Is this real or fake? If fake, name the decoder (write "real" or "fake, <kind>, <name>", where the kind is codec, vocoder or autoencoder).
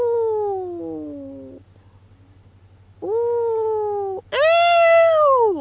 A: real